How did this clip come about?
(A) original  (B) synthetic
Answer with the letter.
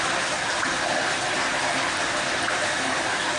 A